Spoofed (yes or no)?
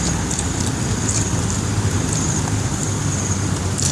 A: no